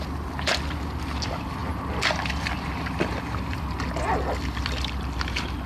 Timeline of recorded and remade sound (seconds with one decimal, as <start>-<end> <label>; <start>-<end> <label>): 0.0-5.7 recorded